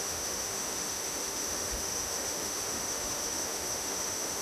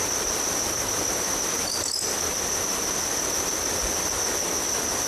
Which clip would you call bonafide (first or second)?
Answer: second